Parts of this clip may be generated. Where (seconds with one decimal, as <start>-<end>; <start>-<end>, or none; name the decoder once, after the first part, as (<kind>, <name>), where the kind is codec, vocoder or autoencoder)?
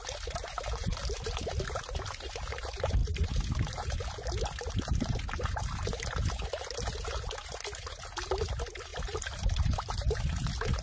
8.9-9.5 (vocoder, BigVGAN v2)